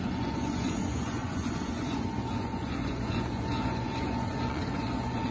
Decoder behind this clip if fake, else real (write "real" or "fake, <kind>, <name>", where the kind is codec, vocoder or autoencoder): fake, vocoder, Vocos